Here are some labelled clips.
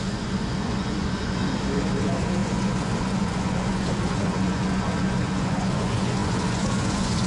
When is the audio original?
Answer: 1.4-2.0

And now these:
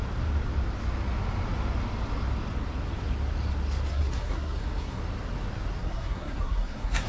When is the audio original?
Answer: 0.0-3.9; 5.0-5.8

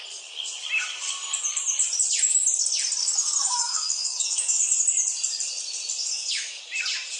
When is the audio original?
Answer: 0.0-3.0; 4.8-6.0; 6.6-7.2

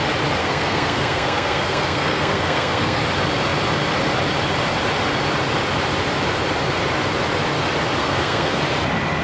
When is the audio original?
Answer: 0.0-0.4; 3.0-8.0; 8.6-9.2

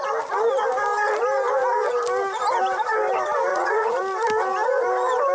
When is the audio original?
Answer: 0.0-3.5; 4.0-5.3